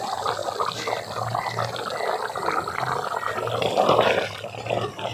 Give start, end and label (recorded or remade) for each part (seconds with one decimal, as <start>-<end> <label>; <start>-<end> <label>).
0.0-5.1 recorded